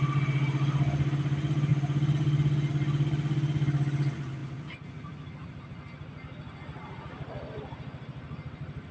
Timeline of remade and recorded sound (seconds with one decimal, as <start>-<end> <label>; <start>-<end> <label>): 0.0-8.9 recorded